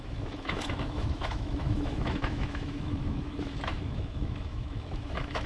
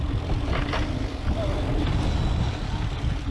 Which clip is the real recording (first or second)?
second